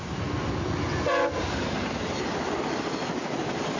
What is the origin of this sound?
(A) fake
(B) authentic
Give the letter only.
B